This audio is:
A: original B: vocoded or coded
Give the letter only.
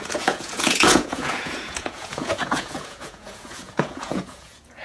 B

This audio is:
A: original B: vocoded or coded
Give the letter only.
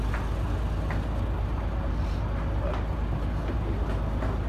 A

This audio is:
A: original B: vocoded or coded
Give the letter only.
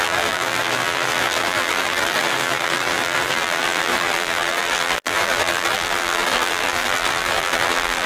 B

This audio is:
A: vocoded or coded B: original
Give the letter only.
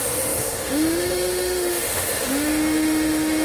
A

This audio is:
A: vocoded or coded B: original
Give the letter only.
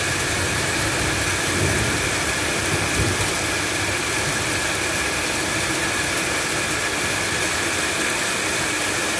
B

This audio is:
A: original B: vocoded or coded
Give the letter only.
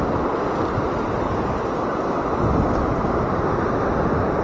A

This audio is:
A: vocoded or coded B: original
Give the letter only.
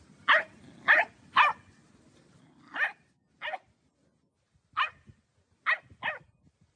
B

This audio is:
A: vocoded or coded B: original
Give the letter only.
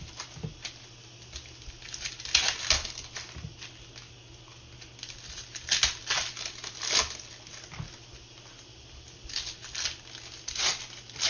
B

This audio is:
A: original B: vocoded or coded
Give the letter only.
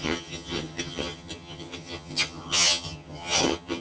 B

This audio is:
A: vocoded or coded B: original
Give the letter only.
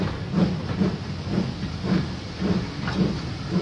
B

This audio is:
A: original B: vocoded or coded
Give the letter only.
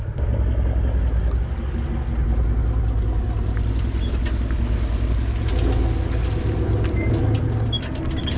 A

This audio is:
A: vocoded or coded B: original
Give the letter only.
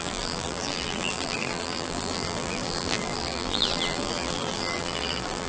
A